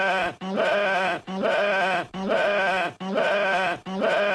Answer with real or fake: real